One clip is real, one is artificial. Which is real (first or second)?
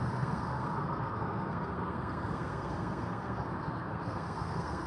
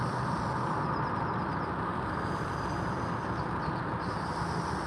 second